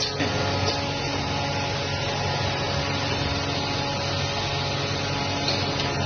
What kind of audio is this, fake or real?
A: real